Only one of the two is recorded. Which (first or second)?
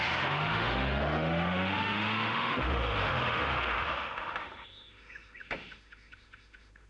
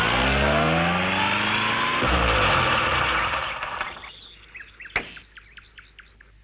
second